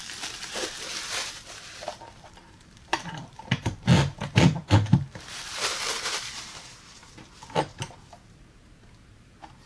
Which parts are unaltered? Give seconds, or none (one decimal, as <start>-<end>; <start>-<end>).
7.0-7.6